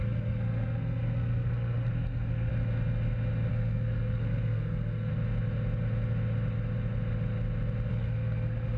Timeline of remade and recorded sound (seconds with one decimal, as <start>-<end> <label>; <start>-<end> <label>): 0.0-2.5 remade; 2.5-3.5 recorded; 3.5-5.1 remade; 5.1-7.9 recorded; 7.9-8.8 remade